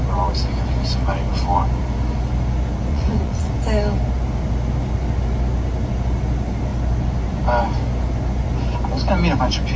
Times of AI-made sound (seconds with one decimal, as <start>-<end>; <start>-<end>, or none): 2.9-3.5